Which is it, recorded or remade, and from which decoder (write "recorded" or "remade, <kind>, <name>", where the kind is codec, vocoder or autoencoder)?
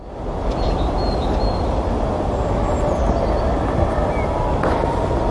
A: recorded